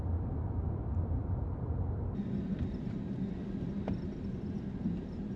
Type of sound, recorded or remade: recorded